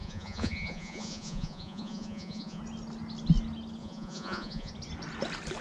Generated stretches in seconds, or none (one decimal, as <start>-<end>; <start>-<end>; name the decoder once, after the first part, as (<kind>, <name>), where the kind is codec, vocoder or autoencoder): 0.0-2.6 (vocoder, Vocos); 3.8-4.7